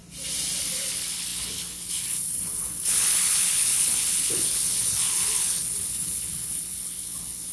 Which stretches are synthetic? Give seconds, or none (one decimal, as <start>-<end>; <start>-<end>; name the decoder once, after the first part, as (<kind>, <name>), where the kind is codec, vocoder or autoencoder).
0.6-7.5 (codec, HILCodec)